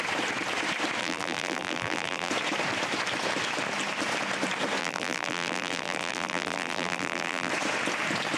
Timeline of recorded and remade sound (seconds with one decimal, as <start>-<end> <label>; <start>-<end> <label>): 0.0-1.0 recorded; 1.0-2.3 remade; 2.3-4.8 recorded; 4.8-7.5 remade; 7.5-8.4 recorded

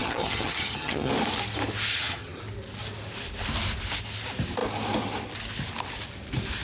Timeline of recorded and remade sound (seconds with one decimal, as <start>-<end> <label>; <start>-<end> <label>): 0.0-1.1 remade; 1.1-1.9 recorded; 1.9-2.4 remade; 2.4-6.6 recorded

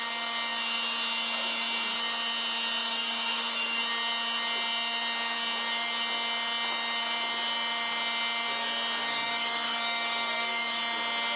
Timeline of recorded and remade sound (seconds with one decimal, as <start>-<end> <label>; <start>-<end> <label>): 0.0-2.8 recorded; 2.8-3.8 remade; 3.8-9.0 recorded; 9.0-10.8 remade; 10.8-11.4 recorded

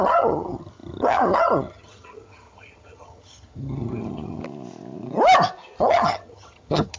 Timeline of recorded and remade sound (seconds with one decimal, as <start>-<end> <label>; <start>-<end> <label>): 0.0-4.4 remade; 4.4-5.8 recorded; 5.8-7.0 remade

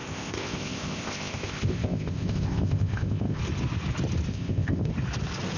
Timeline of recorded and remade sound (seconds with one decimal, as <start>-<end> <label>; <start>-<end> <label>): 0.0-3.4 remade; 3.4-4.3 recorded; 4.3-4.9 remade; 4.9-5.6 recorded